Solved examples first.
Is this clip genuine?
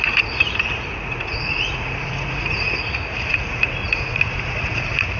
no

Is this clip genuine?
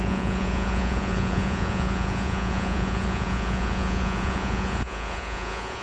no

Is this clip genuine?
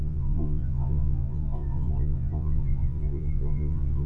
no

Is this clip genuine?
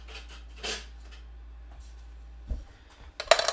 yes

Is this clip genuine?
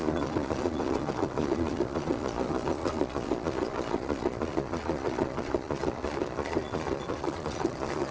no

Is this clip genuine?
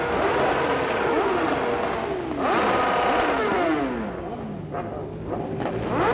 yes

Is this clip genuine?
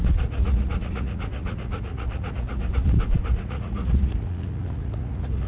no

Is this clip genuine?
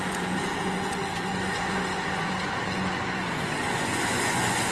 no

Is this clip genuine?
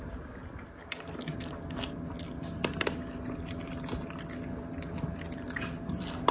yes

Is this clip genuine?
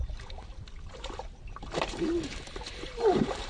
yes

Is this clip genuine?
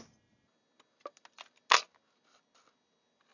yes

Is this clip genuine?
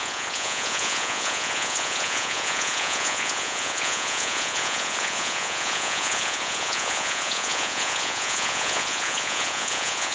no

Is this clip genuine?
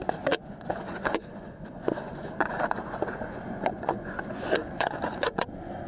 no